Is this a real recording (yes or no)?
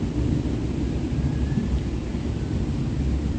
yes